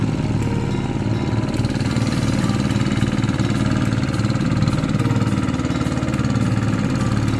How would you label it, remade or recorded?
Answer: recorded